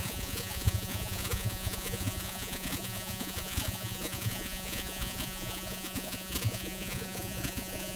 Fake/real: fake